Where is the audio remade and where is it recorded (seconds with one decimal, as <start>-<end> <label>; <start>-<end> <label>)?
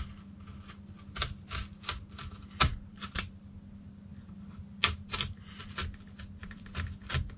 0.0-2.7 recorded; 2.7-3.4 remade; 3.4-6.4 recorded; 6.4-7.0 remade; 7.0-7.4 recorded